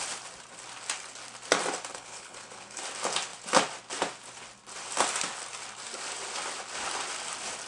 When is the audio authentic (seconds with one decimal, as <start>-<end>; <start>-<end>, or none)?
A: 0.0-1.9; 2.8-7.7